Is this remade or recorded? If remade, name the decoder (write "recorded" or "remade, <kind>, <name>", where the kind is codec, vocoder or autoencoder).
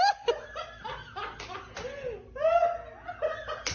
recorded